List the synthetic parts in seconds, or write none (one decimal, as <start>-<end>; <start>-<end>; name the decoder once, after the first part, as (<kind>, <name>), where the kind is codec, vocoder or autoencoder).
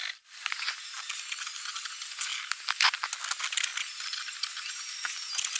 none